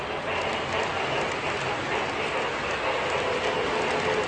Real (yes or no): yes